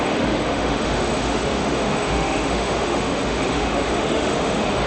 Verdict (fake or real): fake